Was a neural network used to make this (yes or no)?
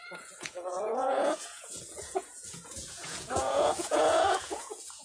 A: yes